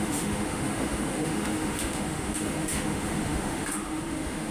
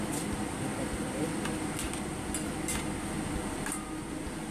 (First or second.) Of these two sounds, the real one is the second